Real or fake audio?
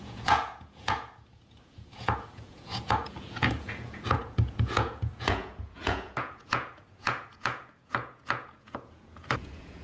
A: fake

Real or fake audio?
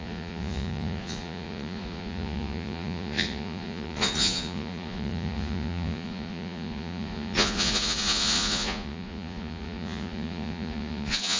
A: fake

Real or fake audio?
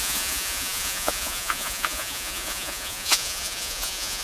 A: fake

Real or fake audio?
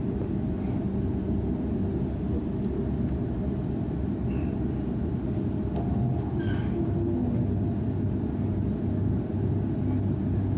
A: real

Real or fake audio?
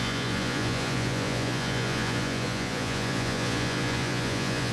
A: fake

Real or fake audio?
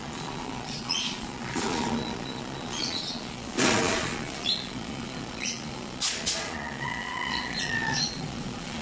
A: fake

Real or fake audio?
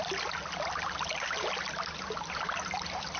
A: real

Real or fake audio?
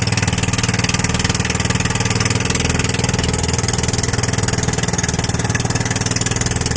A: real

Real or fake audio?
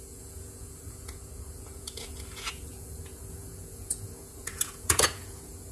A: fake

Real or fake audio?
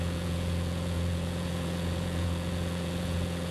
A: fake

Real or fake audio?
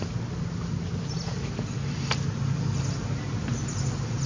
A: real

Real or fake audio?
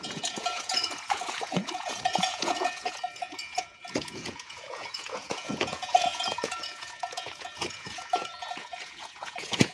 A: fake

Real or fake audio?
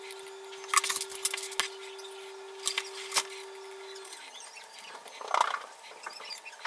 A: real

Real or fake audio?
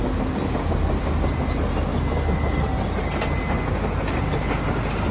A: real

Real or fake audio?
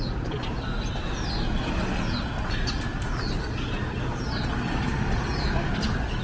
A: real